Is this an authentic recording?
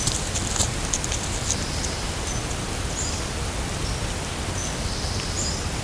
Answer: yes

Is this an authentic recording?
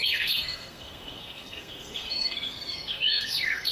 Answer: no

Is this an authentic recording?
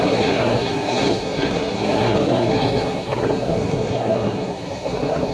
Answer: no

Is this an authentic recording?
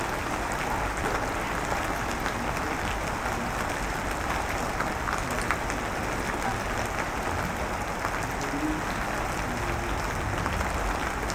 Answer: yes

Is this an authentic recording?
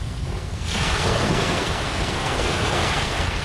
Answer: no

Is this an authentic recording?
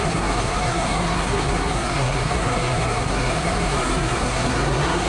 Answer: no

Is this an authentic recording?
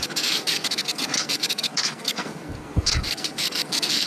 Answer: no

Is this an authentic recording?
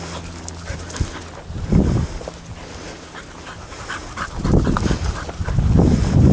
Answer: yes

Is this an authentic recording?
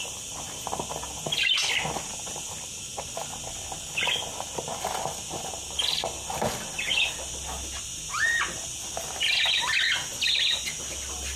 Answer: yes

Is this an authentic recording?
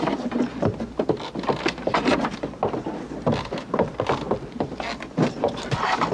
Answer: yes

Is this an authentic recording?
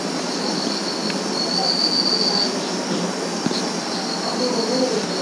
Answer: yes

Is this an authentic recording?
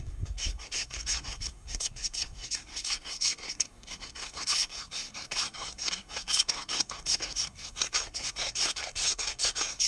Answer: no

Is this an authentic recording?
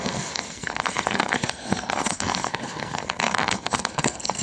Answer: no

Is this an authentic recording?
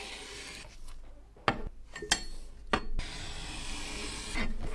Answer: yes